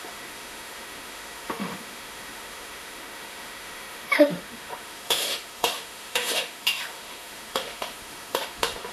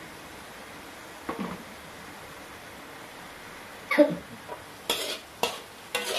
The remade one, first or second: first